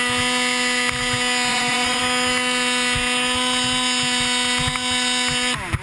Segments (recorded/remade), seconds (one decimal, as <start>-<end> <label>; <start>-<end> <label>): 0.0-1.5 recorded; 1.5-2.0 remade; 2.0-5.8 recorded